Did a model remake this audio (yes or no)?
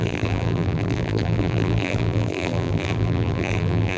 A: yes